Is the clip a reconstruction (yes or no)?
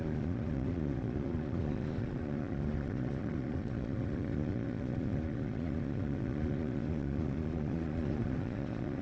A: yes